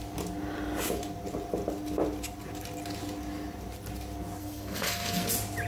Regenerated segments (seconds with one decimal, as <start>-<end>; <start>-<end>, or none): 4.4-5.3